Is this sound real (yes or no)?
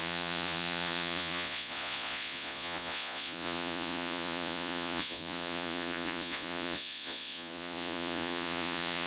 no